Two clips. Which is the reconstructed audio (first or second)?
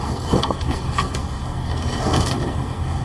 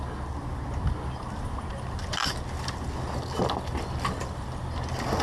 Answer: first